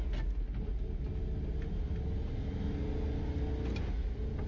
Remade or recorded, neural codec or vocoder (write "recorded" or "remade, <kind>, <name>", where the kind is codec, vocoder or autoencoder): recorded